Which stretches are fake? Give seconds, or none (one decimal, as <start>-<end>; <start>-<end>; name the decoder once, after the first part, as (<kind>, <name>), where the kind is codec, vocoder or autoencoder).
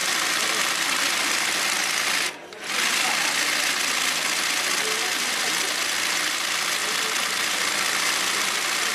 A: 0.0-1.6 (vocoder, BigVGAN v2); 6.8-8.9